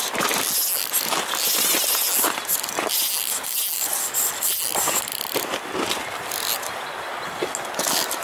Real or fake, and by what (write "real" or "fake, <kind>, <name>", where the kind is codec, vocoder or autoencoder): real